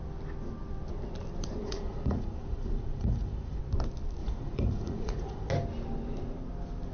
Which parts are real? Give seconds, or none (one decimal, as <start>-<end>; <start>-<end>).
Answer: 0.0-1.6; 3.6-4.2; 5.5-6.9